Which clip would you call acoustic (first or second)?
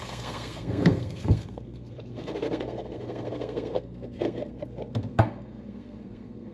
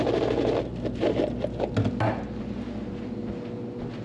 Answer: second